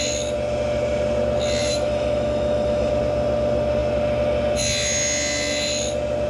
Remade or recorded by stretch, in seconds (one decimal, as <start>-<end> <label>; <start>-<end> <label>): 0.0-1.6 recorded; 1.6-2.9 remade; 2.9-6.3 recorded